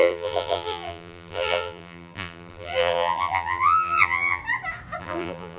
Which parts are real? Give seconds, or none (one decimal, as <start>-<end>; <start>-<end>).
4.4-5.0